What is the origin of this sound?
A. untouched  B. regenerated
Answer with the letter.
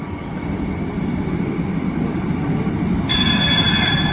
A